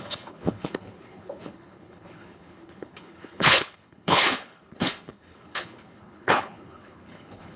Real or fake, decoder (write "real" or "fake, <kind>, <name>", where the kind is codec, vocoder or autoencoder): fake, codec, HILCodec